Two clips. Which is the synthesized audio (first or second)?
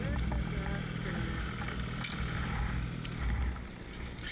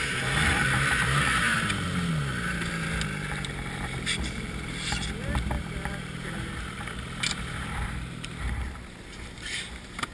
second